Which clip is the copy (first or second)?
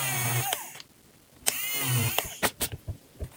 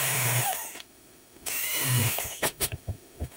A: second